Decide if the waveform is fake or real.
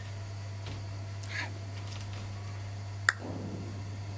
real